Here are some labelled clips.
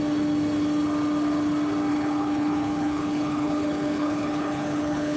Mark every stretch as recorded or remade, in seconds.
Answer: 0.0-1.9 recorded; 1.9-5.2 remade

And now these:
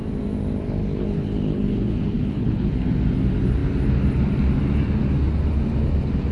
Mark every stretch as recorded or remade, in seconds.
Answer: 0.0-0.8 recorded; 0.8-2.7 remade; 2.7-6.3 recorded

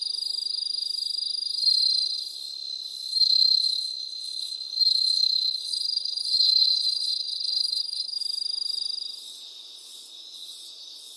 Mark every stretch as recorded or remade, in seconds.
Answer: 0.0-3.1 recorded; 3.1-8.2 remade; 8.2-11.2 recorded

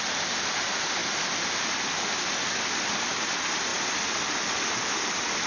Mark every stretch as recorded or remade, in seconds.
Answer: 0.0-5.5 recorded

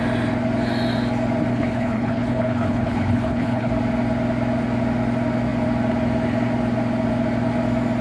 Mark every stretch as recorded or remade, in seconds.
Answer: 0.0-1.5 recorded; 1.5-3.7 remade; 3.7-8.0 recorded

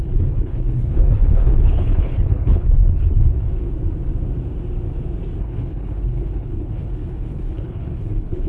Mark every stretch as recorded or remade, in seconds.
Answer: 0.0-3.5 remade; 3.5-5.4 recorded; 5.4-8.5 remade

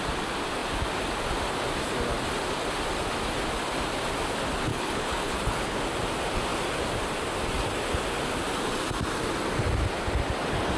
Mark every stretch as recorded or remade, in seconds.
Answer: 0.0-4.7 recorded; 4.7-5.8 remade; 5.8-10.8 recorded